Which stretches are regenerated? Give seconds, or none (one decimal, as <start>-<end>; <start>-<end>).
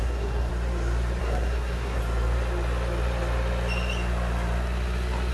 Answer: 0.0-0.5; 1.2-2.0